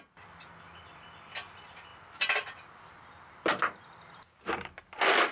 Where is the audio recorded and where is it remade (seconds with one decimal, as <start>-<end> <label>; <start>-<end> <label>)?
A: 0.0-5.3 recorded